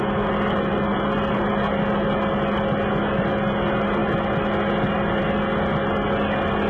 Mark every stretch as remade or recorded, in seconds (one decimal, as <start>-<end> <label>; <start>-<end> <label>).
0.0-6.7 recorded